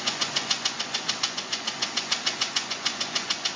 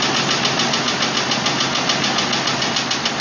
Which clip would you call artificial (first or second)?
first